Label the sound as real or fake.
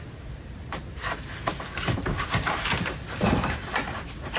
real